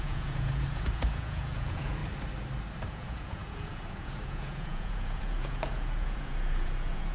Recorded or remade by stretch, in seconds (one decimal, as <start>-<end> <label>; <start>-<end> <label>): 0.0-2.0 remade; 2.0-2.9 recorded; 2.9-7.1 remade